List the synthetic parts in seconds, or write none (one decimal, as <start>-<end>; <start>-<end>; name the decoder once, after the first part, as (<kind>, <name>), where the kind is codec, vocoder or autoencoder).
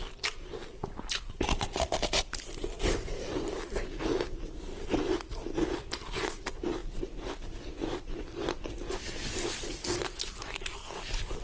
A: none